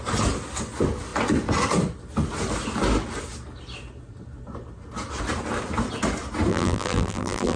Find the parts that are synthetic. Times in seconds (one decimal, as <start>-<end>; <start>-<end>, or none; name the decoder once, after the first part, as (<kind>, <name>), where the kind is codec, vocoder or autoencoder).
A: 6.5-7.6 (vocoder, BigVGAN v2)

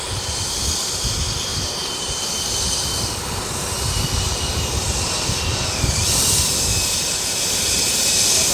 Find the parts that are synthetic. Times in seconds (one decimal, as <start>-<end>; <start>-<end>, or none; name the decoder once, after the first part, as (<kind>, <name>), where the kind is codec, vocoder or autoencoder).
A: 1.5-2.7 (vocoder, BigVGAN v2)